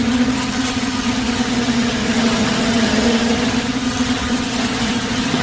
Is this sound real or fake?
fake